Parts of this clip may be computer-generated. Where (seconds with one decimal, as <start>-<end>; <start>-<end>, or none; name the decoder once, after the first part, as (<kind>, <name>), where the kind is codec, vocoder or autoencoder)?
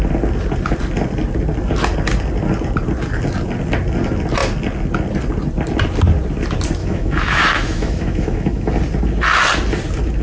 6.8-8.7 (autoencoder, DAC-VAE)